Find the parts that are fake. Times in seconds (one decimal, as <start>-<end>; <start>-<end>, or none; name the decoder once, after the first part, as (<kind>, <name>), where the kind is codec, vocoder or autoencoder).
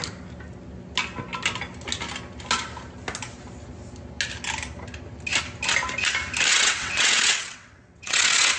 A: 6.5-8.6 (vocoder, WaveNeXt)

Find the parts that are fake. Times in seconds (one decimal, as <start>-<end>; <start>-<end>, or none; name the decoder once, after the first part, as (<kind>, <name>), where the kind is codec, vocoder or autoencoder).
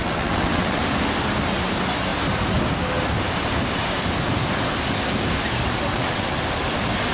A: 0.0-0.8 (vocoder, WaveNeXt); 5.9-6.4